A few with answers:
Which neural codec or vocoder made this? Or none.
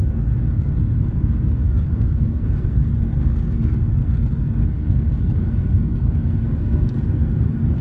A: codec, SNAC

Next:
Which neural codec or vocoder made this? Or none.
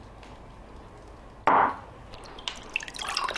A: none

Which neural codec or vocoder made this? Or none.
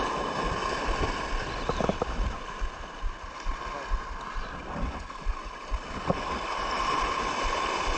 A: none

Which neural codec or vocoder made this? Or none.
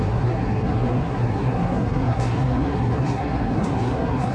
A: codec, SNAC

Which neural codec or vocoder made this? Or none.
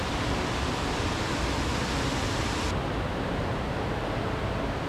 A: none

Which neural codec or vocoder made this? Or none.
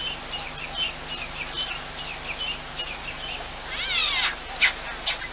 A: none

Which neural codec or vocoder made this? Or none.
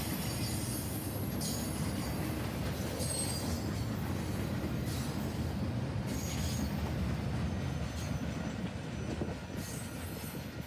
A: none